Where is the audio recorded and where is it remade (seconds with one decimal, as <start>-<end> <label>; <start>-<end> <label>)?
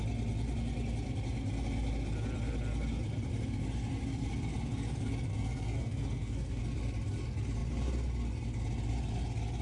0.0-5.3 recorded; 5.3-6.6 remade; 6.6-9.6 recorded